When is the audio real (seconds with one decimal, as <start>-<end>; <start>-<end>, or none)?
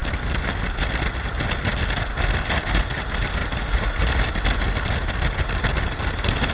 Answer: 0.0-6.5